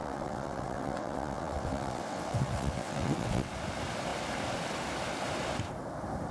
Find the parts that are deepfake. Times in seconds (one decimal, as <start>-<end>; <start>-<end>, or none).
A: 0.0-3.5